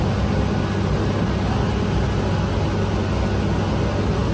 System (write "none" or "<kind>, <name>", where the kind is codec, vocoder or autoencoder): none